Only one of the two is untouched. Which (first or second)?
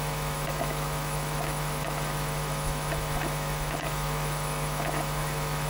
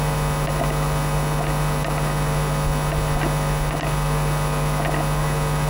second